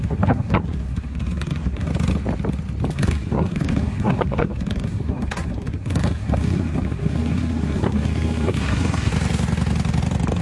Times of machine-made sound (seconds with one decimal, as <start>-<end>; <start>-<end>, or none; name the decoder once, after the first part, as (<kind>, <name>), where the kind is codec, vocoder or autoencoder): 0.0-1.9 (codec, SNAC); 2.9-9.1